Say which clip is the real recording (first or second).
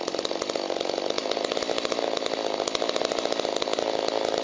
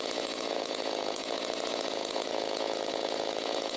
first